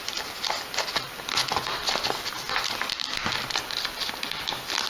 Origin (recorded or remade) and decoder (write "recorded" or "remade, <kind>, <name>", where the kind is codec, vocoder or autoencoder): recorded